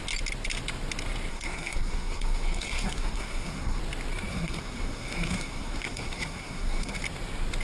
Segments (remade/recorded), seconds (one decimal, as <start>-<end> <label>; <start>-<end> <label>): 0.0-1.3 recorded; 1.3-3.8 remade; 3.8-4.3 recorded; 4.3-7.0 remade; 7.0-7.6 recorded